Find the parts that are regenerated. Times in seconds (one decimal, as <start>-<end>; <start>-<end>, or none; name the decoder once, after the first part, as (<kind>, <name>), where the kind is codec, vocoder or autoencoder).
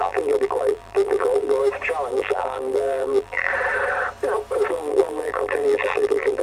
0.0-1.6 (vocoder, BigVGAN v2); 2.1-3.5; 4.7-6.4